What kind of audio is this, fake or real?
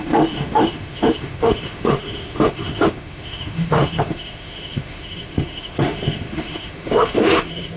fake